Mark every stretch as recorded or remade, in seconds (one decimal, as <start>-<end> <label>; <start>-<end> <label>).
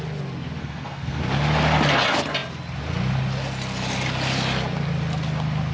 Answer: 0.0-0.6 recorded; 0.6-1.2 remade; 1.2-5.7 recorded